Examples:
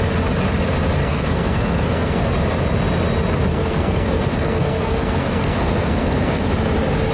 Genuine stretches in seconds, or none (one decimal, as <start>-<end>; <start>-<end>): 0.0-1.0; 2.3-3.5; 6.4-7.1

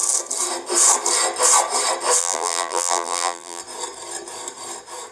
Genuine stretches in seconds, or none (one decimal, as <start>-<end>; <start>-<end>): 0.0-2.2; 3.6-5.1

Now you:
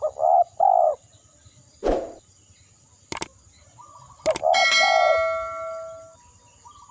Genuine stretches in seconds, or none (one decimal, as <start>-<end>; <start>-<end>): 0.0-6.9